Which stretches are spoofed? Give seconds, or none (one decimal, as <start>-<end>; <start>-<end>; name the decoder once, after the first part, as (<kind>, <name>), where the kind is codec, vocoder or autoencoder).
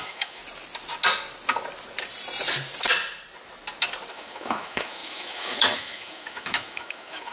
0.0-0.4 (autoencoder, DAC-VAE); 4.1-7.3